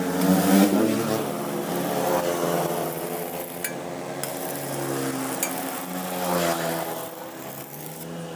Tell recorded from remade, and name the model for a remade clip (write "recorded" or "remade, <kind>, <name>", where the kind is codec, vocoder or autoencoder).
recorded